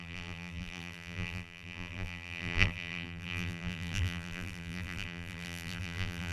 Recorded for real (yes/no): no